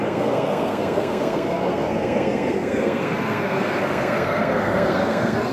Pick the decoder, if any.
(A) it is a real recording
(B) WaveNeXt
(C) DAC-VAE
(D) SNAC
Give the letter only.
D